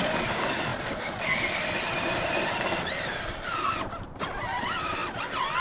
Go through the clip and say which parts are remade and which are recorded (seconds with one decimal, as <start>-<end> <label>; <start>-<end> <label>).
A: 0.0-5.6 remade